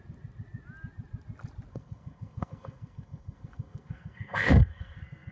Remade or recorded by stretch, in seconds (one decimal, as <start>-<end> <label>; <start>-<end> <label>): 0.0-1.7 recorded; 1.7-5.3 remade